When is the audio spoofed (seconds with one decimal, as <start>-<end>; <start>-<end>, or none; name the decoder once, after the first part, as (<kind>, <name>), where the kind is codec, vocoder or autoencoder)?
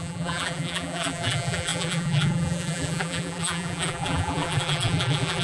0.0-5.4 (vocoder, BigVGAN v2)